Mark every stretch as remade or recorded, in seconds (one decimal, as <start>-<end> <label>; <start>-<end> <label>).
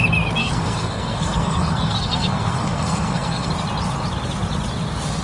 0.0-0.4 recorded; 0.4-3.5 remade; 3.5-5.2 recorded